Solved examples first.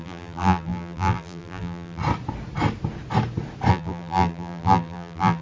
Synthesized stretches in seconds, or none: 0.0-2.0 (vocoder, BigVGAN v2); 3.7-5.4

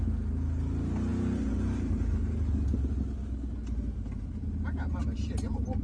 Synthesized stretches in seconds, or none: 5.0-5.8 (vocoder, BigVGAN v2)

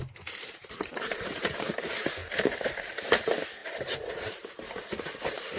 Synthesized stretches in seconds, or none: 0.0-2.2 (vocoder, BigVGAN v2); 3.1-5.6

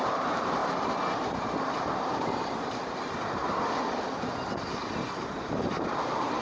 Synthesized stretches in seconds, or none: 0.0-0.6 (vocoder, BigVGAN v2); 2.0-3.4; 4.5-6.4